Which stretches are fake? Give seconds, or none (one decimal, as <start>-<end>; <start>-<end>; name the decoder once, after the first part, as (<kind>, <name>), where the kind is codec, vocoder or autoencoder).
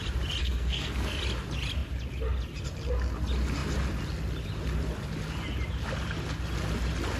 0.4-1.2 (codec, SNAC)